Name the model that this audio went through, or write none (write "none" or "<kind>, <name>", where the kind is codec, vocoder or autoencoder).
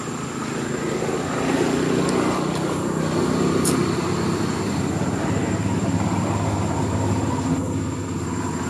none